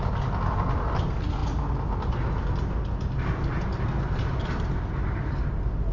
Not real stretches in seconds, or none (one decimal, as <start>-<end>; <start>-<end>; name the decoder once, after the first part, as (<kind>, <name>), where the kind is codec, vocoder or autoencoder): none